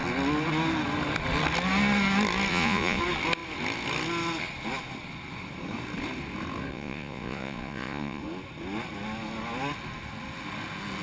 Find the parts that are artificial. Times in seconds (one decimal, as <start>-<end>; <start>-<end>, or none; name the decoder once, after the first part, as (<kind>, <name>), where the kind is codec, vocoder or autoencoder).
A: 2.5-3.0 (vocoder, Vocos); 6.7-8.2